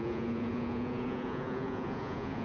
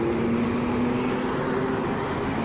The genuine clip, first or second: second